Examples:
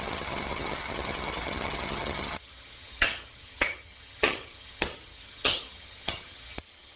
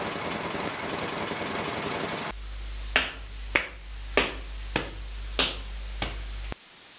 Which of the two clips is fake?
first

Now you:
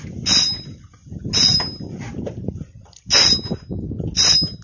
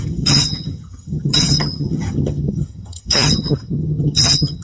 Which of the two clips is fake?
second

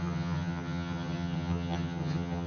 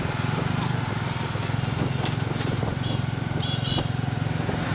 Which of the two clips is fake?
first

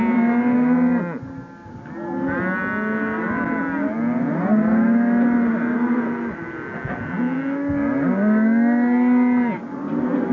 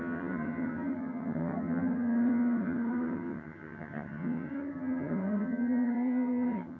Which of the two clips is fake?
second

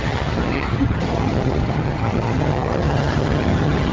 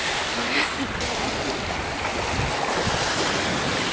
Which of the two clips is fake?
first